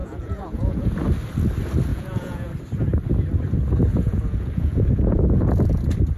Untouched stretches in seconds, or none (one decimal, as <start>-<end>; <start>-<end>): 0.9-1.9; 2.5-3.9; 5.7-6.2